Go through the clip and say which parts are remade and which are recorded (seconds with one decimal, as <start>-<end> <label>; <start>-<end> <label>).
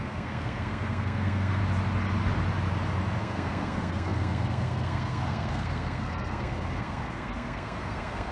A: 0.0-1.6 remade; 1.6-3.2 recorded; 3.2-8.3 remade